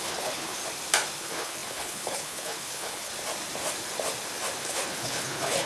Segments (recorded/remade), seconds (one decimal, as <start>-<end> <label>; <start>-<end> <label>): 0.0-0.6 remade; 0.6-1.2 recorded; 1.2-3.1 remade; 3.1-4.6 recorded; 4.6-5.7 remade